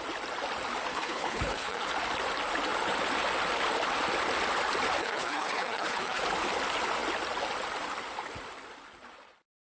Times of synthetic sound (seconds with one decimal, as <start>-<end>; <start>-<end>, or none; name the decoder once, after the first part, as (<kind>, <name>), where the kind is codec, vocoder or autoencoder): 0.9-1.9 (codec, HILCodec); 5.0-6.2